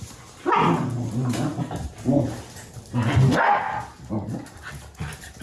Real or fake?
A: real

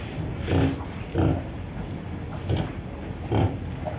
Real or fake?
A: real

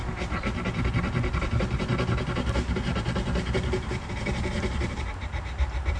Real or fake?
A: real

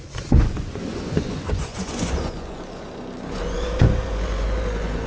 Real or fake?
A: fake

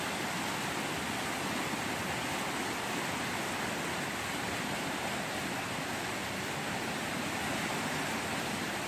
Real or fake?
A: real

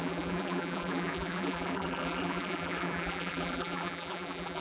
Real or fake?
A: fake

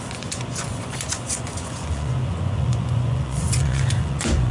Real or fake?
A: fake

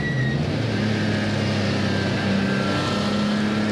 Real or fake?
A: real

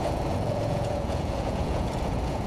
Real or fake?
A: fake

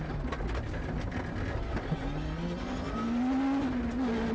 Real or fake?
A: real